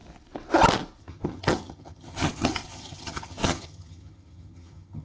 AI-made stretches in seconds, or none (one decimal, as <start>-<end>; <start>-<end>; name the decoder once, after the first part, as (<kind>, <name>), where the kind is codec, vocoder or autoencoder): 1.0-5.0 (vocoder, HiFi-GAN)